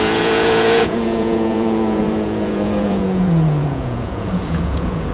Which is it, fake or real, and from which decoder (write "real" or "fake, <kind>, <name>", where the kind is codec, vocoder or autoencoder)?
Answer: fake, vocoder, Vocos